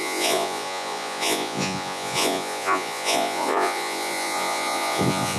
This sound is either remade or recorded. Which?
remade